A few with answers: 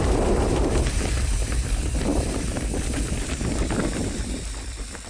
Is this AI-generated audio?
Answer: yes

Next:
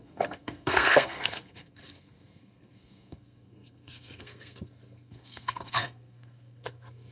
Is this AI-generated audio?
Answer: yes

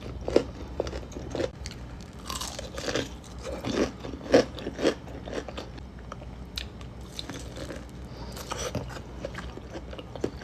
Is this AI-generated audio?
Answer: no